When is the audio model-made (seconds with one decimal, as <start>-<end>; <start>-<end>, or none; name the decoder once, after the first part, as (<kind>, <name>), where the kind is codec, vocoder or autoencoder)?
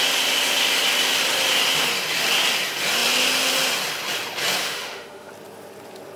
4.6-5.3 (autoencoder, DAC-VAE)